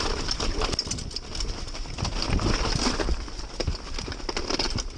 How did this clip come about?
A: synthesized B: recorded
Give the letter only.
B